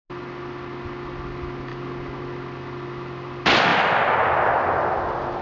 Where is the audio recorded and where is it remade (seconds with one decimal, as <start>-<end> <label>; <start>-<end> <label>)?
0.0-5.4 recorded